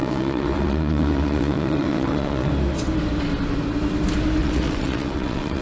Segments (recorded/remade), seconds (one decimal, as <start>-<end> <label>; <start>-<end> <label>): 0.0-2.5 remade; 2.5-4.4 recorded; 4.4-5.6 remade